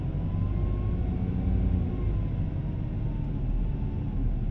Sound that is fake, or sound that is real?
real